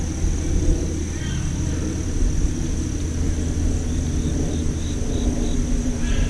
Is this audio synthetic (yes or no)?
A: no